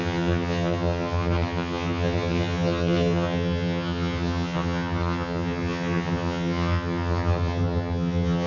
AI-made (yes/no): yes